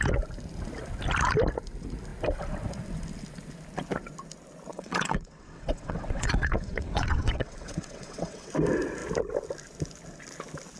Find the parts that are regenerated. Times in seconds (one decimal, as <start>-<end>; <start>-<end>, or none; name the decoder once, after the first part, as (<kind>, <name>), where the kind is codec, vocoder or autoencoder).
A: 4.7-8.5 (vocoder, WaveNeXt)